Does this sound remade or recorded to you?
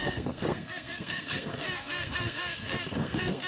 remade